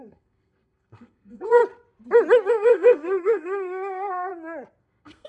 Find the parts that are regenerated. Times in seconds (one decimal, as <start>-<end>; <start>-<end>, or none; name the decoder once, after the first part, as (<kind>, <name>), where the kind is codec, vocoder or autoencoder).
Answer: 0.0-1.6 (codec, SNAC); 2.5-4.3; 4.8-5.3